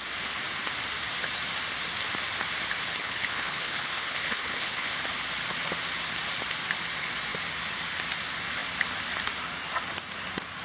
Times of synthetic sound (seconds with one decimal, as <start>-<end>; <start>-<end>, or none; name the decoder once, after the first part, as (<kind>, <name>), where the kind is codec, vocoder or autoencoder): 3.0-4.9 (codec, HILCodec)